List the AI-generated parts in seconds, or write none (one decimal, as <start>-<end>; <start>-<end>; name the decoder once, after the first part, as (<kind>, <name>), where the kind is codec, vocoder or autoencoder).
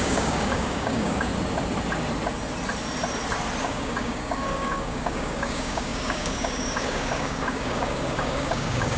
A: 0.0-1.3 (codec, DAC); 3.6-9.0